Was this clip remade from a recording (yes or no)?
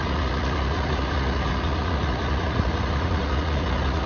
yes